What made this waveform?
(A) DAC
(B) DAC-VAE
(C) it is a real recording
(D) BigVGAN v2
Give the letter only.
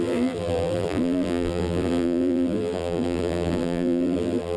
D